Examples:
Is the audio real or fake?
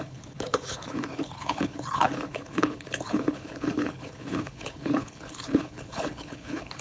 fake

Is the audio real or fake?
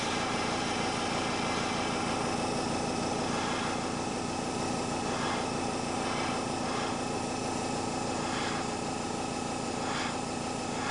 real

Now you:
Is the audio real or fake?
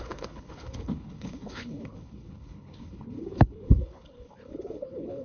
fake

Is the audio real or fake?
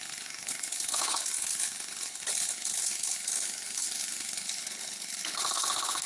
fake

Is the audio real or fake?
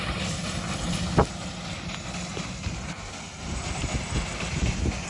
real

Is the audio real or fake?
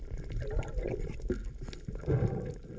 real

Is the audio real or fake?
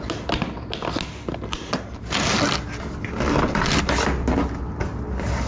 real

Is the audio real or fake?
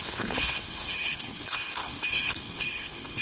fake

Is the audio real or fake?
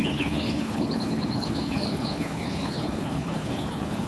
fake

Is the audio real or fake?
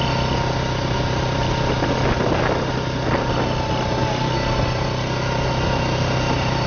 real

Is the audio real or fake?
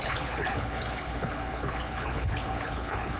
fake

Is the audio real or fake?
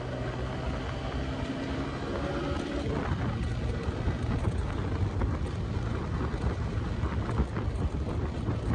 real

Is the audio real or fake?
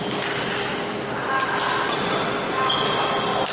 real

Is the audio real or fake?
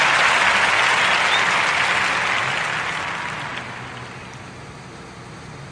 real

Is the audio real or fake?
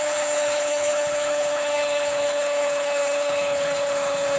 fake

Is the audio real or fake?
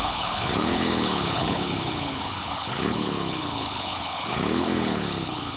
fake